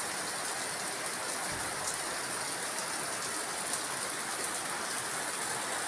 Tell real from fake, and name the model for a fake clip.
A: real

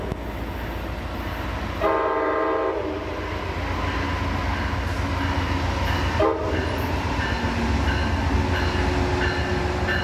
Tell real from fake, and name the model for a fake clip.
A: real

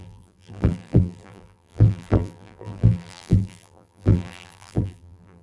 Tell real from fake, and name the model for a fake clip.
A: fake, vocoder, BigVGAN v2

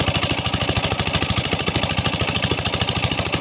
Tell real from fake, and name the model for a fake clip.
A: real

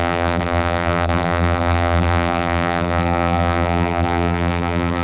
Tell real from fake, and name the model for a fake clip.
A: fake, vocoder, BigVGAN v2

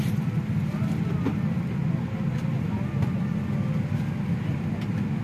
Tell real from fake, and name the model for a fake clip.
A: real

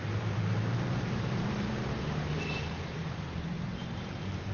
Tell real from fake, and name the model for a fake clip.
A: fake, vocoder, BigVGAN v2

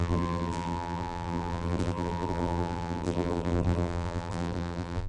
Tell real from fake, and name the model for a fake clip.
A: fake, vocoder, BigVGAN v2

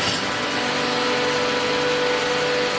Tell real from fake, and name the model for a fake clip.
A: real